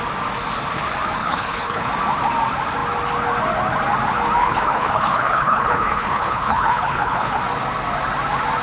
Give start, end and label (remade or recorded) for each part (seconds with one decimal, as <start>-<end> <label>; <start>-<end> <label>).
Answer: 0.0-1.2 recorded; 1.2-1.9 remade; 1.9-4.4 recorded; 4.4-7.4 remade; 7.4-8.6 recorded